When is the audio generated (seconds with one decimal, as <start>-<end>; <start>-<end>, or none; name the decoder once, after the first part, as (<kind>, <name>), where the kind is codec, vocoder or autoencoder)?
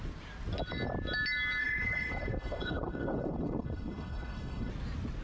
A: 1.6-4.7 (codec, HILCodec)